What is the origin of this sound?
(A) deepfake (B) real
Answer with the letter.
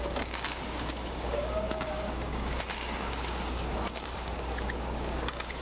A